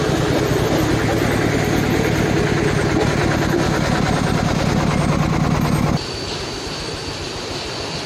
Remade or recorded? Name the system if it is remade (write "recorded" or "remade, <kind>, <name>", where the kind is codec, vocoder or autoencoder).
recorded